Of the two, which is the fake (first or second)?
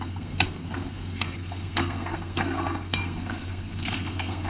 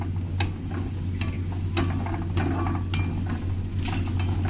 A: first